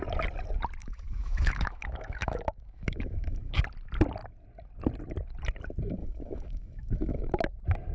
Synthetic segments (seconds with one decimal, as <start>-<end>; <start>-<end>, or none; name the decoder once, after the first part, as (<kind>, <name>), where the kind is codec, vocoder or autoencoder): 0.8-3.6 (autoencoder, DAC-VAE); 6.0-7.2